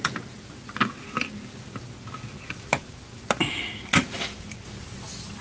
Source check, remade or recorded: recorded